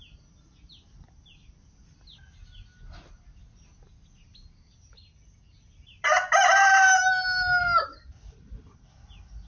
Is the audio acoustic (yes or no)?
yes